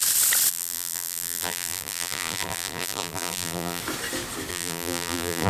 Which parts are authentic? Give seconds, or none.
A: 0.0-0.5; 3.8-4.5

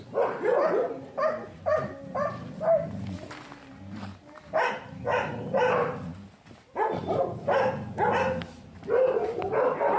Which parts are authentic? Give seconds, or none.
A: 0.0-7.0; 7.7-10.0

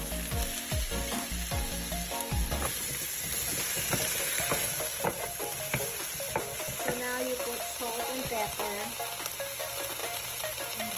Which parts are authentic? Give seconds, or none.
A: 0.0-10.0; 10.6-11.0

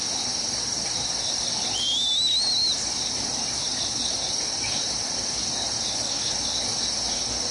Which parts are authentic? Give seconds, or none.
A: 0.0-2.6; 6.1-7.5

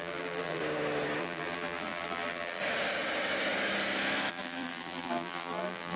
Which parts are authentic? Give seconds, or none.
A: 0.6-1.2; 2.6-4.3

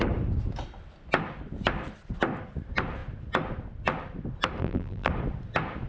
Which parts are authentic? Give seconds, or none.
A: 0.0-4.6; 5.1-5.9

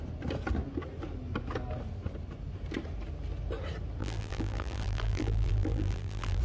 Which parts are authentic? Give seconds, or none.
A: 0.0-4.0

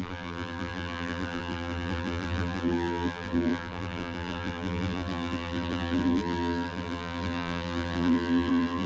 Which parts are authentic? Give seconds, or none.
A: none